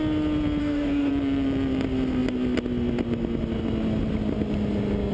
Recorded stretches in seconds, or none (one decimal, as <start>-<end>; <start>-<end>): 0.0-0.6; 1.1-5.1